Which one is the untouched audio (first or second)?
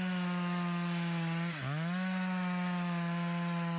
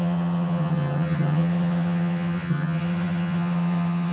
first